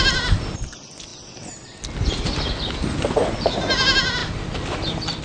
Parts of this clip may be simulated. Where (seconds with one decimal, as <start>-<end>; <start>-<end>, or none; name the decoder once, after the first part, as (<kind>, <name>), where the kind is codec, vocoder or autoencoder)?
none